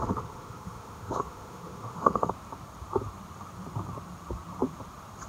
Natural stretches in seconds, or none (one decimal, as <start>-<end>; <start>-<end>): 2.3-5.3